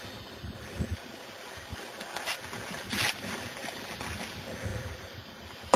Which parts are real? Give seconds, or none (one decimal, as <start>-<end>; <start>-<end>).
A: 0.0-5.8